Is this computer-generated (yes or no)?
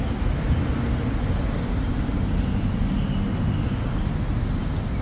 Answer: no